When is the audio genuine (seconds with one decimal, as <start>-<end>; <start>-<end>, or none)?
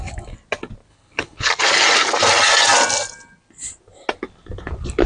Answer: 0.0-0.9; 1.5-5.1